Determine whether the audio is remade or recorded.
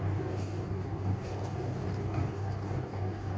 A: remade